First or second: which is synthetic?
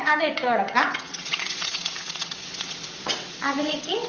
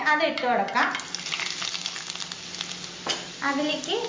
first